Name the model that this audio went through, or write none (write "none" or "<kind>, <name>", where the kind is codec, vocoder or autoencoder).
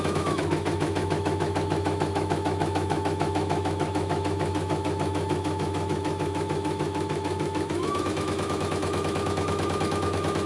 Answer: autoencoder, DAC-VAE